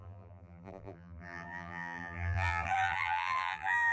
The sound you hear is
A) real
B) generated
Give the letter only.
B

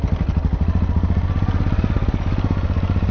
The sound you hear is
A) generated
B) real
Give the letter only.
B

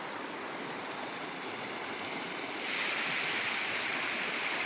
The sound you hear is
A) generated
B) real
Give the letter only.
B